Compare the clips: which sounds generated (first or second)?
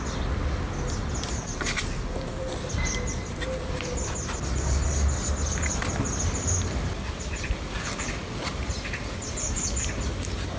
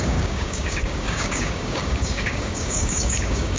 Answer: second